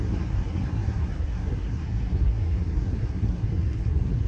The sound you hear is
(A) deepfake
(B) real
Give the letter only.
A